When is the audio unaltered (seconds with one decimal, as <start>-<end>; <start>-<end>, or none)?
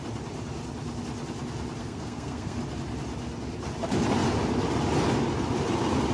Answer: 0.0-1.8; 2.6-6.1